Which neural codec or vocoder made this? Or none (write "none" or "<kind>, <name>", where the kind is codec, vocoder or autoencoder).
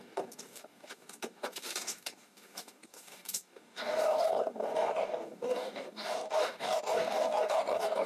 codec, DAC